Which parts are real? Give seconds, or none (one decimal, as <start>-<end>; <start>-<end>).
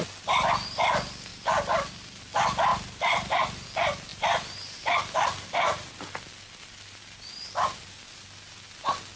0.0-1.3; 2.2-2.7; 3.3-4.1; 7.9-9.2